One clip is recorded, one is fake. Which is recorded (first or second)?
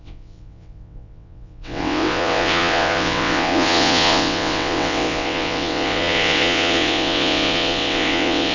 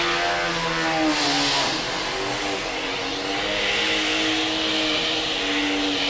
second